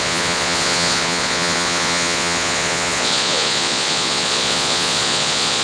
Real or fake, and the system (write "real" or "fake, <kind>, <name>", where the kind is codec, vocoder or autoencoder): fake, vocoder, Vocos